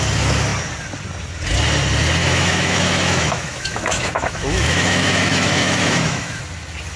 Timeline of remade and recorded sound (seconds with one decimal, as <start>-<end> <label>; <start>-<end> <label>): 0.0-2.2 recorded; 2.2-6.4 remade; 6.4-7.0 recorded